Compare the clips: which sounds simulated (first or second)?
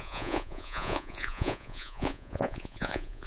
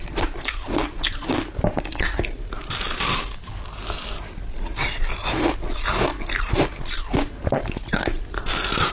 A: first